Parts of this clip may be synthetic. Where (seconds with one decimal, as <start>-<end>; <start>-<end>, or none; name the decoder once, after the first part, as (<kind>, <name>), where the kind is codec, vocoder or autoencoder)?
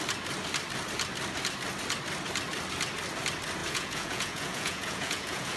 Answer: 3.6-5.6 (vocoder, Vocos)